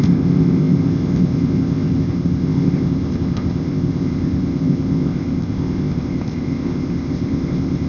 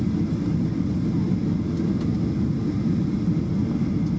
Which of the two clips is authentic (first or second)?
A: second